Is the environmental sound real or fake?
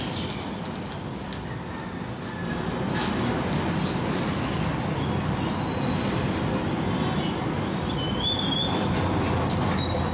real